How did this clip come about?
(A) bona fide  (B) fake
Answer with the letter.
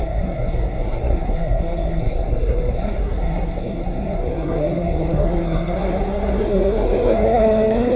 B